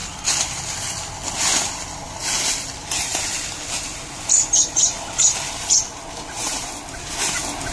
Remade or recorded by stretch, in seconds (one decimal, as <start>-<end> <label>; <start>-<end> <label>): 0.0-7.7 recorded